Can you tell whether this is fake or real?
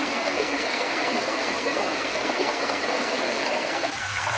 fake